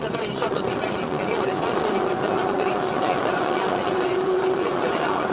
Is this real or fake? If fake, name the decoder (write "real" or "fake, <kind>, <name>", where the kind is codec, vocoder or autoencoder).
fake, vocoder, Vocos